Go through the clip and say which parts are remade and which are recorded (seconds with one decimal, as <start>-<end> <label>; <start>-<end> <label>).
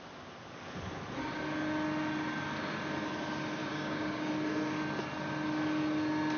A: 0.0-3.6 recorded; 3.6-4.3 remade; 4.3-6.4 recorded